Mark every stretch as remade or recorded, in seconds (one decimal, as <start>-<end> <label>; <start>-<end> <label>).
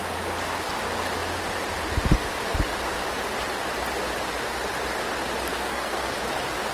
0.0-5.5 recorded; 5.5-6.1 remade; 6.1-6.7 recorded